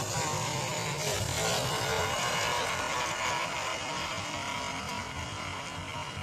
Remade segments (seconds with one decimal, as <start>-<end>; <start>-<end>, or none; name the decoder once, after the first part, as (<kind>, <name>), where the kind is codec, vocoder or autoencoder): none